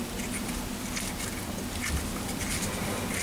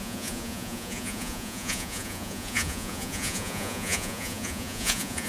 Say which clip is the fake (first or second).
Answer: second